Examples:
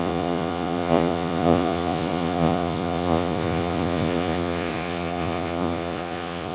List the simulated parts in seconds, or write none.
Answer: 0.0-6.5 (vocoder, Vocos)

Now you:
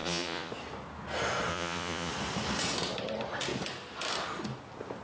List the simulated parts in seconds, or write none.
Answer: 0.0-0.5 (vocoder, Vocos); 1.5-2.1

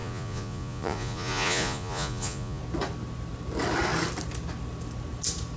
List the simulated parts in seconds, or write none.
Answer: 0.0-2.6 (vocoder, Vocos)